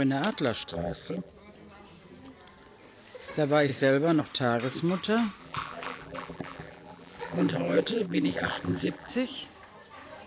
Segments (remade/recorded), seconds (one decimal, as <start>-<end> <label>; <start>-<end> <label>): 0.0-0.7 recorded; 0.7-1.3 remade; 1.3-5.4 recorded; 5.4-9.1 remade; 9.1-10.3 recorded